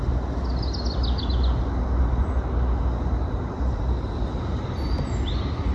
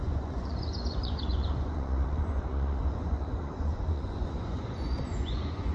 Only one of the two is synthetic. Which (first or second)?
second